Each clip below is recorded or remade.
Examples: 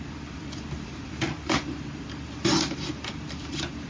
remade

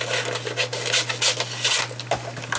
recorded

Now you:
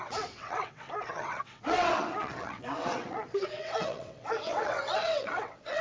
remade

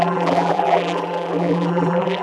remade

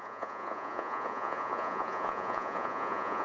remade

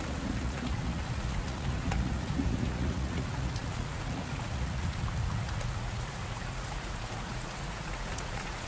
remade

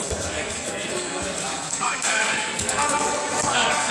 remade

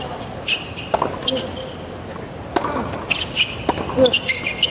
recorded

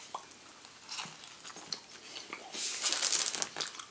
recorded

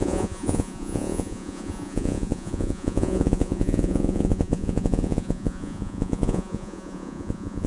remade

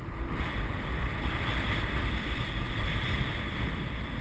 recorded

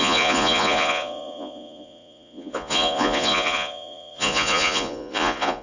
remade